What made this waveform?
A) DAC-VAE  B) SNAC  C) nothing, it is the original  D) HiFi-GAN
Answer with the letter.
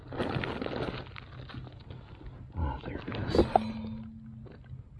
C